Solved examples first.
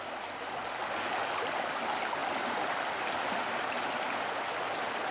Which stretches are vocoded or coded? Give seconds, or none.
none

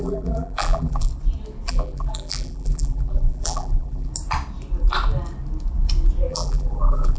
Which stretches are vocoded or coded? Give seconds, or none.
0.0-1.1 (vocoder, BigVGAN v2); 1.7-4.1; 6.3-7.2

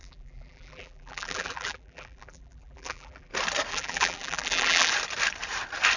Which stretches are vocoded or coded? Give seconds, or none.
0.0-3.3 (vocoder, BigVGAN v2); 3.7-4.9

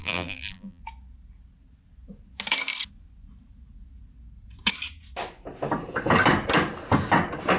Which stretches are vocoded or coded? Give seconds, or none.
0.0-0.8 (vocoder, BigVGAN v2)

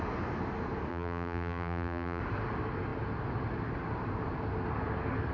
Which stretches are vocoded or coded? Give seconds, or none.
0.9-2.2 (vocoder, BigVGAN v2)

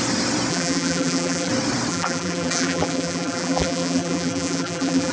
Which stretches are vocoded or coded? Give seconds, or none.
0.5-1.5 (vocoder, BigVGAN v2); 1.9-5.1

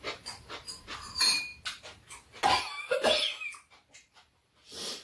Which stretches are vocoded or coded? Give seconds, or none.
0.0-1.5 (vocoder, BigVGAN v2); 2.6-5.0